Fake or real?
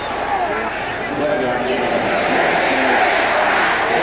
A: real